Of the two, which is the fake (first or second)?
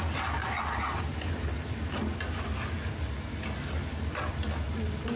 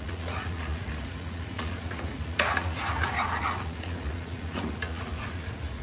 second